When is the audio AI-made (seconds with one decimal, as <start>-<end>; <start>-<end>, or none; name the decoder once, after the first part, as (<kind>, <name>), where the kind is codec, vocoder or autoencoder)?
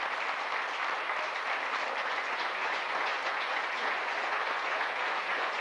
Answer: 2.0-5.6 (vocoder, Vocos)